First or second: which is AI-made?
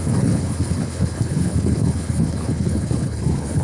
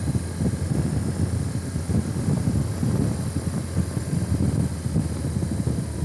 first